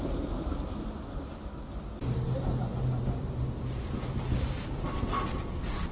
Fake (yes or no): no